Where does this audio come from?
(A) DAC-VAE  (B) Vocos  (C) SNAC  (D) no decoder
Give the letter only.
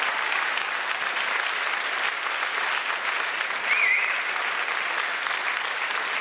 D